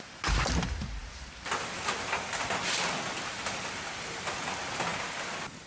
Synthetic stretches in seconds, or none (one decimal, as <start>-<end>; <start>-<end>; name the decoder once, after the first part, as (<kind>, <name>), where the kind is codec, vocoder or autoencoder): none